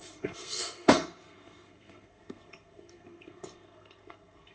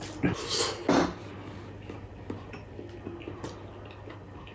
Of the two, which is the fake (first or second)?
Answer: first